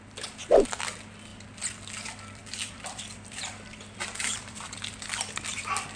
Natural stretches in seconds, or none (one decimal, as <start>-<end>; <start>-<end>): 0.0-2.4; 5.0-6.0